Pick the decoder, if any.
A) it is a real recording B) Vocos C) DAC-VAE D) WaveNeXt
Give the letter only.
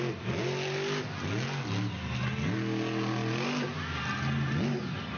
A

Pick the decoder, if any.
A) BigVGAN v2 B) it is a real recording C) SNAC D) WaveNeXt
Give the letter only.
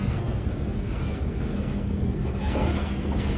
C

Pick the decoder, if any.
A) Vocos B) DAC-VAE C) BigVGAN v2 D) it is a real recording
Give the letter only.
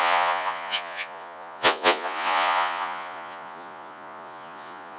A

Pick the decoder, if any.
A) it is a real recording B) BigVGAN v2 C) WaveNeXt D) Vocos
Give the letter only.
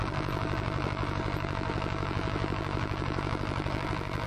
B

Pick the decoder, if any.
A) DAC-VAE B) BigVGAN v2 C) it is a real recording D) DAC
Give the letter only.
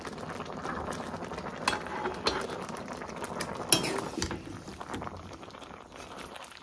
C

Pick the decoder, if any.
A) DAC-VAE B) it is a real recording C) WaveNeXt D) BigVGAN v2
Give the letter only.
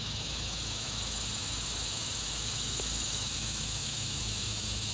A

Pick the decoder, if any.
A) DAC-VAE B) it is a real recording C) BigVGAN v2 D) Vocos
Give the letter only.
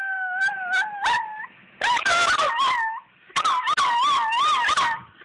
B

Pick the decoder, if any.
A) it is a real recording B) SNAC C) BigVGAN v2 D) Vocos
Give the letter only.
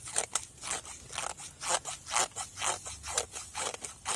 A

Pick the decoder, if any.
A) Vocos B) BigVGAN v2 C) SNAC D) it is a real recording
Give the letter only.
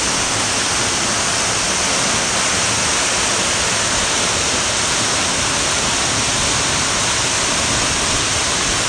D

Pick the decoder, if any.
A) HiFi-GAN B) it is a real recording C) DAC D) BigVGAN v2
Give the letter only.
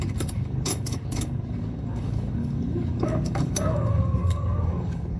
C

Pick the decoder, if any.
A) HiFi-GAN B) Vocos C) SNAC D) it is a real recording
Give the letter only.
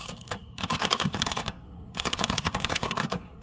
C